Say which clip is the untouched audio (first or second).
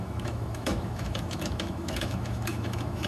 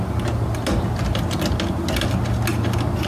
second